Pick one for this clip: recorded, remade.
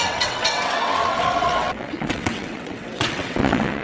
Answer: remade